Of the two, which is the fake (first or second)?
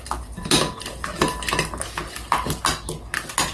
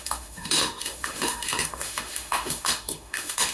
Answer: second